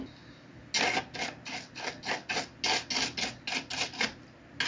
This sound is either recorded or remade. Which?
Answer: recorded